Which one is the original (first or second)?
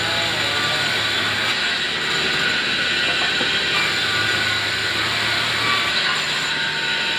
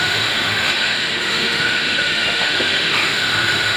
first